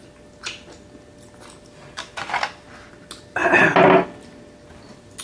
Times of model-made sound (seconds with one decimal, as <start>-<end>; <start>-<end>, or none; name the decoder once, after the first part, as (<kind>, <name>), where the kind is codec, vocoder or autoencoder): none